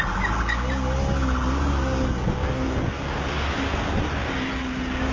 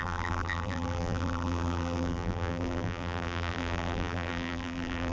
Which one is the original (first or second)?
first